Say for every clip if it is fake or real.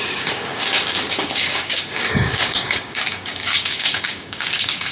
fake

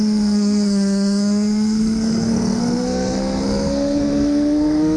fake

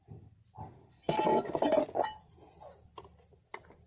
real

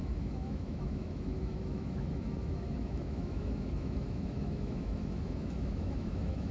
fake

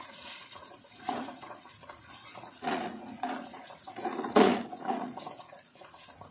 fake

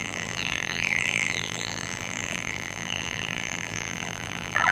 fake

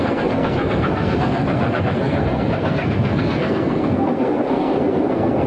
fake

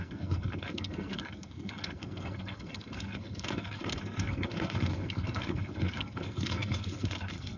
fake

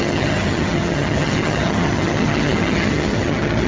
fake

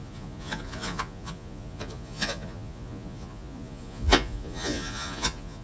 fake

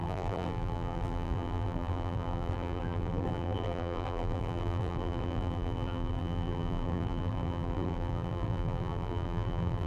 fake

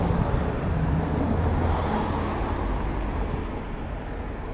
real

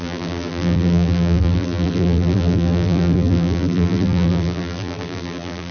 fake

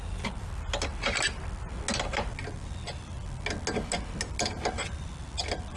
real